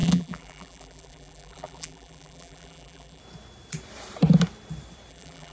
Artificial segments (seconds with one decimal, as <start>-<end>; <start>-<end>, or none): 0.0-3.2; 5.1-5.5